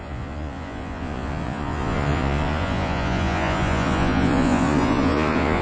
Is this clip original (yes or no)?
no